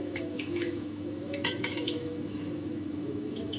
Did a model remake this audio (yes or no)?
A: yes